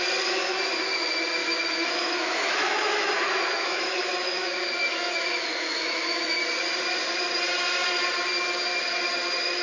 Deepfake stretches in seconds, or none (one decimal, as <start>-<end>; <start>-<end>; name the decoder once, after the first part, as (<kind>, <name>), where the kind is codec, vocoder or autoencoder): 1.4-6.4 (autoencoder, DAC-VAE)